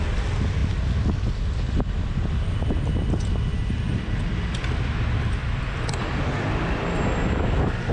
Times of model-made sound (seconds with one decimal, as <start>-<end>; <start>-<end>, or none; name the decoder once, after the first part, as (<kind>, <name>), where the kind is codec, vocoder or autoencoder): none